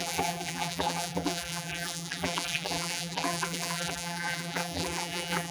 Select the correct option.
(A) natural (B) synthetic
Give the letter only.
B